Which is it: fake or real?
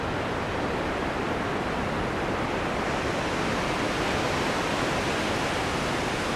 real